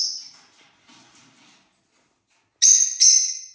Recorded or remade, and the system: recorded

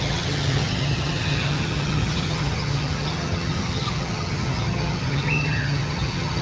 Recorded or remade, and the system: remade, vocoder, HiFi-GAN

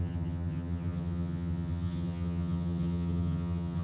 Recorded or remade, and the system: remade, vocoder, HiFi-GAN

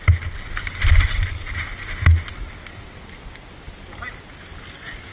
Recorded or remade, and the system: recorded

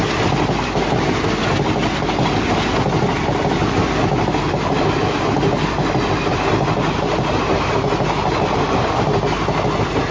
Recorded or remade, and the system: recorded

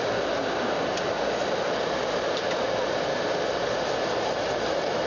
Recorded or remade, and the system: recorded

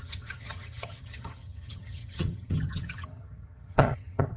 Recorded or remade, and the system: remade, vocoder, HiFi-GAN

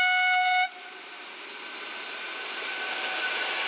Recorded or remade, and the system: recorded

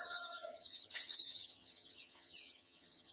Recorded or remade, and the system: remade, vocoder, HiFi-GAN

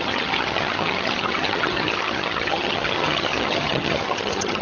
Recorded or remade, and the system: remade, vocoder, HiFi-GAN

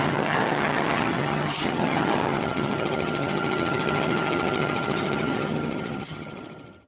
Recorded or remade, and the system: remade, vocoder, HiFi-GAN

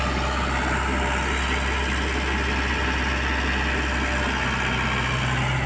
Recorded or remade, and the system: recorded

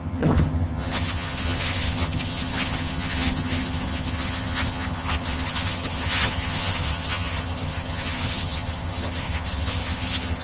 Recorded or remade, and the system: remade, vocoder, HiFi-GAN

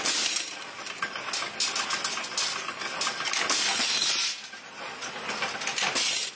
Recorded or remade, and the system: recorded